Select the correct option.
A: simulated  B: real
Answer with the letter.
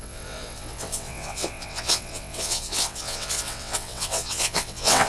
A